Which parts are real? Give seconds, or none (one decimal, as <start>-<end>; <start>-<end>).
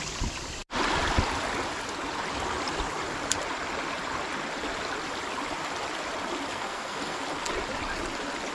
0.0-6.5; 7.2-8.5